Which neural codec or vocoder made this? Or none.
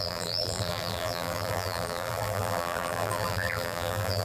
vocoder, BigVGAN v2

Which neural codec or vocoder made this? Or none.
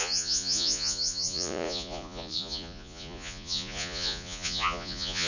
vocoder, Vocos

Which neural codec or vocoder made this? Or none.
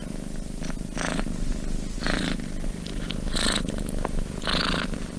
none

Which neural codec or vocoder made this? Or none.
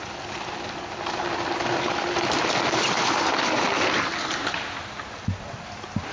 none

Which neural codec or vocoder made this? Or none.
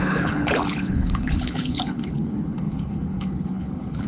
codec, HILCodec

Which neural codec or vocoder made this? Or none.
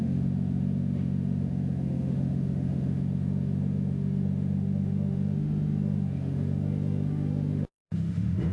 autoencoder, DAC-VAE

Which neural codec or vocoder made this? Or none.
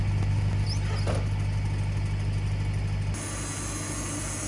none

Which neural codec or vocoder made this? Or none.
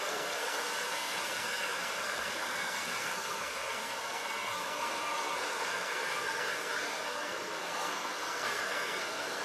codec, SNAC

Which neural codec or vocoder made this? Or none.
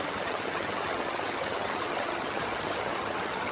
vocoder, HiFi-GAN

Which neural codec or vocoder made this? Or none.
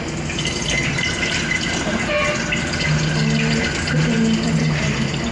vocoder, BigVGAN v2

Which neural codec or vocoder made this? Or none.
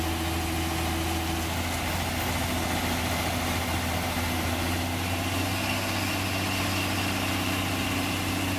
none